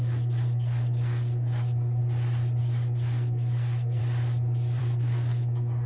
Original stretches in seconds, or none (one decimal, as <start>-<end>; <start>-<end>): 2.0-2.6; 4.0-4.8